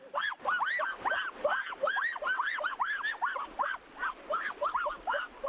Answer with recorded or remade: recorded